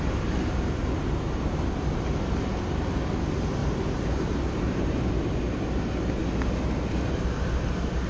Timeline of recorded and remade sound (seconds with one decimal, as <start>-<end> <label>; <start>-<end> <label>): 0.0-3.6 recorded; 3.6-5.0 remade; 5.0-8.1 recorded